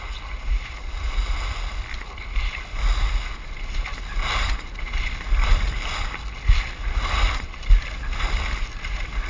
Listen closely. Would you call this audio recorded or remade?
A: recorded